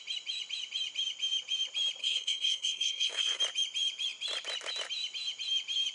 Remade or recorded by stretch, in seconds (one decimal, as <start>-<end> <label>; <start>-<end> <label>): 0.0-2.0 recorded; 2.0-3.4 remade; 3.4-5.9 recorded